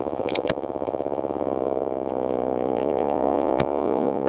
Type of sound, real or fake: fake